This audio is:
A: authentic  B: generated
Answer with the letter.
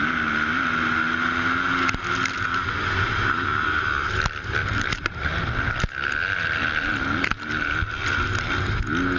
A